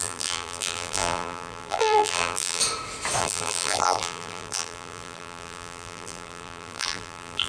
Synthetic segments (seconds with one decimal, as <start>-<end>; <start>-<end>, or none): 0.0-2.6; 3.2-7.5